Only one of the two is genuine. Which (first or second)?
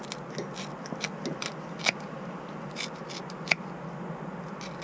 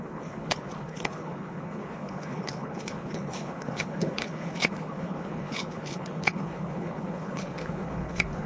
first